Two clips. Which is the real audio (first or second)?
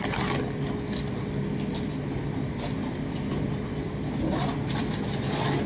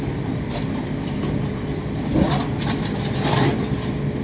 first